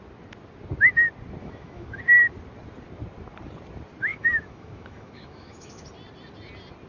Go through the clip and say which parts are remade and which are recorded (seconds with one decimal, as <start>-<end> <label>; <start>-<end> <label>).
0.0-1.4 recorded; 1.4-2.0 remade; 2.0-4.1 recorded; 4.1-5.8 remade; 5.8-6.9 recorded